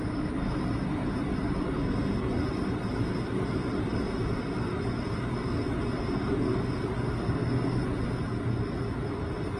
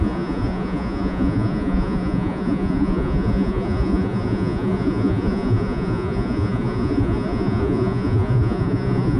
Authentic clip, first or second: first